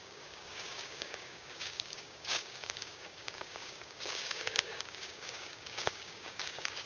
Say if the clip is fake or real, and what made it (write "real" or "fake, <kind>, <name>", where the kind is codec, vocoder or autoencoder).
fake, codec, DAC